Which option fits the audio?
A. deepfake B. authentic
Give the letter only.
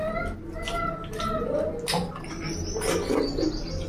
B